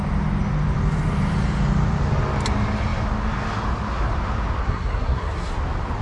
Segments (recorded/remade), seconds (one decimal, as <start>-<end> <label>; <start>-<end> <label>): 0.0-4.6 recorded; 4.6-5.5 remade; 5.5-6.0 recorded